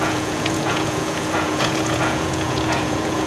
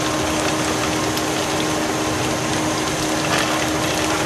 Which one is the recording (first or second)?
second